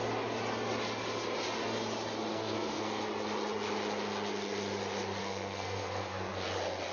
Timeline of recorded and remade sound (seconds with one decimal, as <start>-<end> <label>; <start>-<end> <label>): 0.0-2.3 recorded; 2.3-3.0 remade; 3.0-5.2 recorded; 5.2-6.3 remade; 6.3-6.9 recorded